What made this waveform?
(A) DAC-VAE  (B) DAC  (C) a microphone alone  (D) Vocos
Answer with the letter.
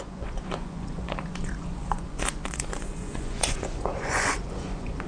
D